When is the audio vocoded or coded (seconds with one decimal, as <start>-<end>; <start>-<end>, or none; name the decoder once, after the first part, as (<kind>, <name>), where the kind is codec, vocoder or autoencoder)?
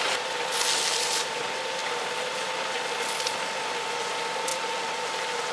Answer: 0.9-1.4 (vocoder, BigVGAN v2); 1.8-2.5; 4.5-5.5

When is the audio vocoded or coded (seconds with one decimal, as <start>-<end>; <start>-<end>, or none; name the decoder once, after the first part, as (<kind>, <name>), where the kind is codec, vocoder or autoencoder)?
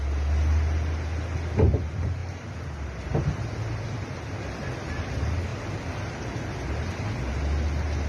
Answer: 2.2-3.2 (vocoder, BigVGAN v2); 5.5-6.4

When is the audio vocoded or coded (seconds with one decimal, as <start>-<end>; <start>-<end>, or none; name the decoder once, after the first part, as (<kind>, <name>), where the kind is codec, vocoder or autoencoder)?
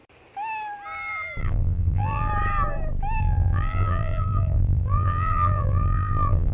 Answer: 1.4-2.3 (vocoder, BigVGAN v2); 3.2-6.5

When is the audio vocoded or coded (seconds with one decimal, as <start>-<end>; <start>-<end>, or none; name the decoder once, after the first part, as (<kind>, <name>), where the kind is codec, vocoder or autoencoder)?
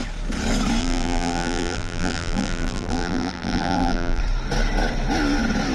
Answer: 0.8-4.2 (vocoder, BigVGAN v2)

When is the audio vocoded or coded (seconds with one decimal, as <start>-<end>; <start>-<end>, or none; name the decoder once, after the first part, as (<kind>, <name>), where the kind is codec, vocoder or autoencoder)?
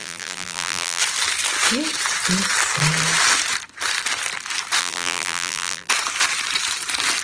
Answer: 0.0-1.0 (vocoder, BigVGAN v2); 4.8-5.9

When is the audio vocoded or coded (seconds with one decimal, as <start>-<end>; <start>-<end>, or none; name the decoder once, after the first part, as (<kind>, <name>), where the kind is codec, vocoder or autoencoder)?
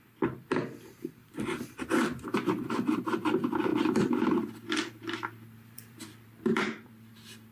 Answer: 1.2-3.0 (vocoder, BigVGAN v2); 3.7-7.1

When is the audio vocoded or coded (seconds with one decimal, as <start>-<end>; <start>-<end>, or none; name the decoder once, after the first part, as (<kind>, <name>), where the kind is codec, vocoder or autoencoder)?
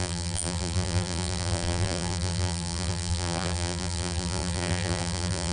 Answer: 0.0-5.5 (vocoder, BigVGAN v2)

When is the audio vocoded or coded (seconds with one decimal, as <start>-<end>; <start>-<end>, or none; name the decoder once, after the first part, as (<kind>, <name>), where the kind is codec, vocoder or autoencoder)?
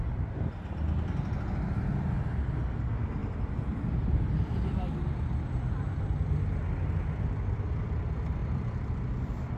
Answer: 3.2-5.1 (vocoder, BigVGAN v2); 8.4-9.6